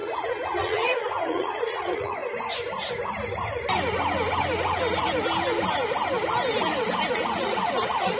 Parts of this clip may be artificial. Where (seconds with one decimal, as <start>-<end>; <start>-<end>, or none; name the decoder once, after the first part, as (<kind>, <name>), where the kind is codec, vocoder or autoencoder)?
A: 0.0-2.2 (vocoder, Vocos); 7.1-8.2